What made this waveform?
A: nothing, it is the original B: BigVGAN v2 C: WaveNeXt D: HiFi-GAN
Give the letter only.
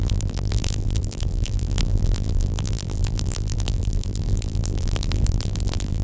B